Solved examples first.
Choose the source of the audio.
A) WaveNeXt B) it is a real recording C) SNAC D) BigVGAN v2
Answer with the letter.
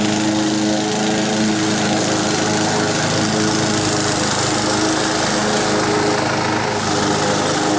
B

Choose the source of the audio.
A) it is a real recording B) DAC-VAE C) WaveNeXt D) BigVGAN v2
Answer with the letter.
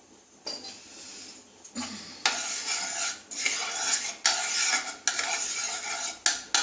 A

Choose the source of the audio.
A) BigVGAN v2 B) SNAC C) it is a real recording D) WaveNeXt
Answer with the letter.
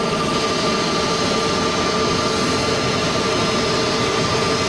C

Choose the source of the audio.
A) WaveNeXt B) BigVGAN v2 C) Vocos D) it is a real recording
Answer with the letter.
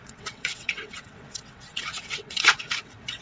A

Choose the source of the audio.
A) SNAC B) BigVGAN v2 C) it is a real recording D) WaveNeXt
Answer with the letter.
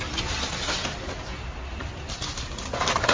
C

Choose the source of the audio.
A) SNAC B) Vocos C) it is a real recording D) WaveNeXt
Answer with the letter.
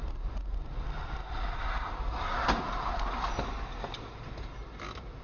C